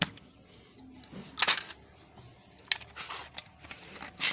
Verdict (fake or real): real